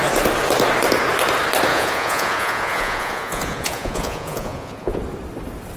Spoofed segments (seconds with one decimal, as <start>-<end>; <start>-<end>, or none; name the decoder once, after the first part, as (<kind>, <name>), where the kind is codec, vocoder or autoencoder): 1.7-5.0 (vocoder, Vocos)